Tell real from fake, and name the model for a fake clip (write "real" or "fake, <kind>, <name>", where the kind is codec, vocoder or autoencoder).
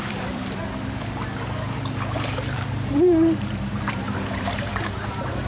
fake, vocoder, BigVGAN v2